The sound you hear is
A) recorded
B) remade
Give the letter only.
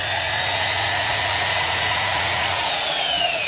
B